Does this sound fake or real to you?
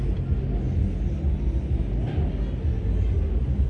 real